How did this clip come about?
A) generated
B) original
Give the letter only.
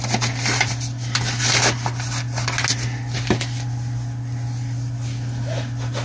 B